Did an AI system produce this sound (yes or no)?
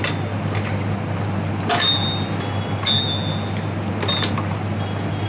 no